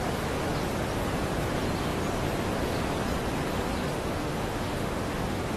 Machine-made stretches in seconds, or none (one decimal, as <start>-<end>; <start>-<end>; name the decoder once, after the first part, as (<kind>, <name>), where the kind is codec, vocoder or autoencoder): 3.8-5.6 (autoencoder, DAC-VAE)